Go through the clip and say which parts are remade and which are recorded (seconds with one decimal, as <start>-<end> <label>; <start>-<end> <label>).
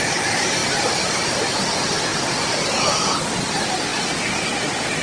0.0-5.0 recorded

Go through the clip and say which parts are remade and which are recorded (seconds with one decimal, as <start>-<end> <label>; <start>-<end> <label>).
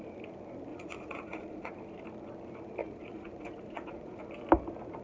0.0-0.7 recorded; 0.7-1.7 remade; 1.7-2.8 recorded; 2.8-4.2 remade; 4.2-5.0 recorded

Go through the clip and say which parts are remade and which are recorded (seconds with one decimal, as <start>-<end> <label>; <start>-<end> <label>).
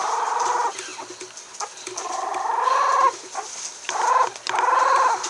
0.0-5.3 recorded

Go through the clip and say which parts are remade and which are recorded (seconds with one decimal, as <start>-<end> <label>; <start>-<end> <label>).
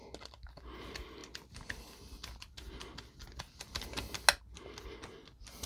0.0-5.7 recorded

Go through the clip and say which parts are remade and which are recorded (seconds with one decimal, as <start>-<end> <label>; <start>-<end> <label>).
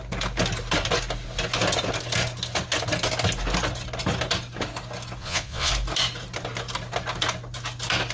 0.0-5.2 recorded; 5.2-5.7 remade; 5.7-8.1 recorded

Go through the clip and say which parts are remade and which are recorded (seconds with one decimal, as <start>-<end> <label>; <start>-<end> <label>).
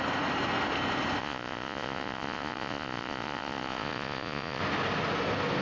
0.0-1.2 recorded; 1.2-4.6 remade; 4.6-5.6 recorded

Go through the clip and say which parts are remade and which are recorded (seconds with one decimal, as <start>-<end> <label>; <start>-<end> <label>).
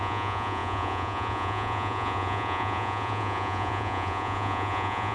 0.0-5.1 remade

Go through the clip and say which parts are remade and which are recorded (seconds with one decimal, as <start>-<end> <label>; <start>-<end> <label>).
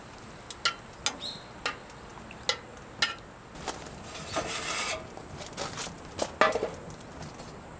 0.0-7.8 recorded